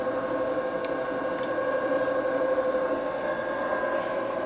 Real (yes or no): yes